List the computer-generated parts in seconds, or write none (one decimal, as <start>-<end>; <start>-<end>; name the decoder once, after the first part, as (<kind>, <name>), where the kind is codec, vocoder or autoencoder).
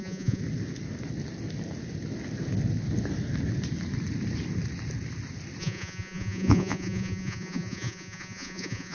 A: 0.0-0.4 (vocoder, Vocos); 5.6-8.9